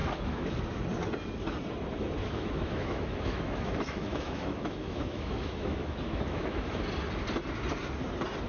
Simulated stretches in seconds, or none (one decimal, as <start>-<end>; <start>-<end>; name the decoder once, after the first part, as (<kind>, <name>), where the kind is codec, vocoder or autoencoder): 0.0-0.6 (autoencoder, DAC-VAE); 2.2-6.8